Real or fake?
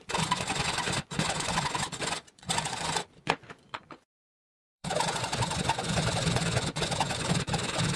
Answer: fake